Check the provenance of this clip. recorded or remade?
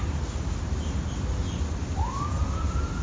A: recorded